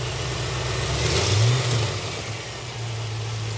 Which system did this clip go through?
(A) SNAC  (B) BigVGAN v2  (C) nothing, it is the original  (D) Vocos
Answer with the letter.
C